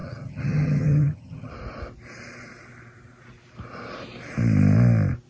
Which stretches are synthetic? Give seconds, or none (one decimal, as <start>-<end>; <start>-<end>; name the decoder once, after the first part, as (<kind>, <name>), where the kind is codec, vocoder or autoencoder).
0.0-1.5 (vocoder, HiFi-GAN)